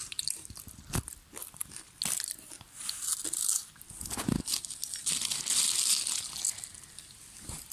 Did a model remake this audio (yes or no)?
no